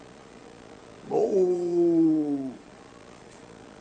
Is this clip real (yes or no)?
no